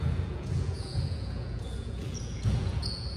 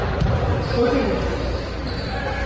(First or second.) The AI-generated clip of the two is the first